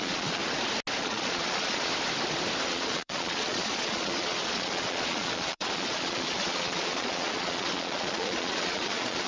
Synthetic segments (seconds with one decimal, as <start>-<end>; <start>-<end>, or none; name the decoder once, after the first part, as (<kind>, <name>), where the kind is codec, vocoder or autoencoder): 0.0-0.4 (vocoder, Vocos); 1.0-1.9; 2.6-9.3